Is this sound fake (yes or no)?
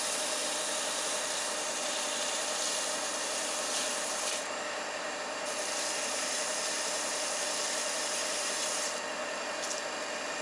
yes